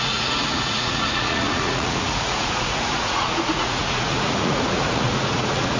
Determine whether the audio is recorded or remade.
remade